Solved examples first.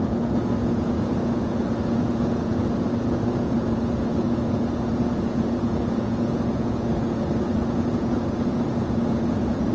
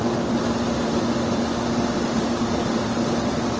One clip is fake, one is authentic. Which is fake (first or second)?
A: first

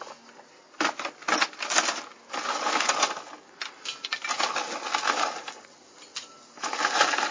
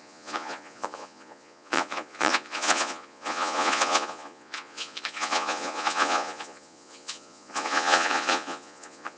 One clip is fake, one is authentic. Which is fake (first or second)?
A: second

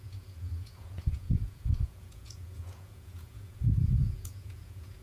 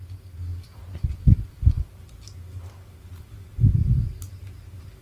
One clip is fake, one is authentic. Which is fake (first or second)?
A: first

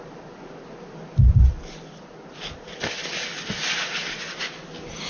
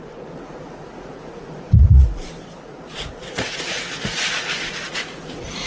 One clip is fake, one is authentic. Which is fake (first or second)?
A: second